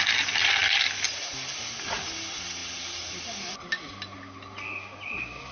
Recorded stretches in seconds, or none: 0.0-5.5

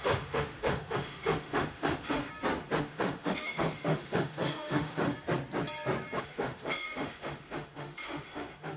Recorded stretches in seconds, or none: 2.3-2.8; 5.1-6.2

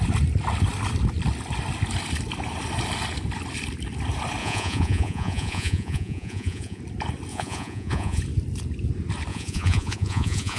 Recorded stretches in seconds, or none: 0.0-4.4; 6.8-7.3; 8.2-9.3